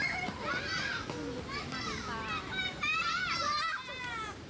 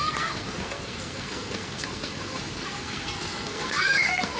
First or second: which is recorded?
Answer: first